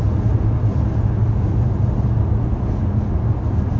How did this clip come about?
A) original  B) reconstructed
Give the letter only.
A